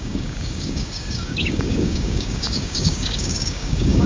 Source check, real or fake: fake